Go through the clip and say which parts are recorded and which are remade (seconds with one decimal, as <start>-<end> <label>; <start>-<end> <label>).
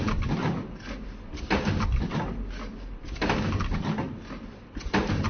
0.0-5.3 recorded